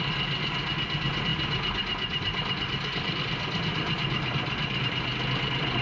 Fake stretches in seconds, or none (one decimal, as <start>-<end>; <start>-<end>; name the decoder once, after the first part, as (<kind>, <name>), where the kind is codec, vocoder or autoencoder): none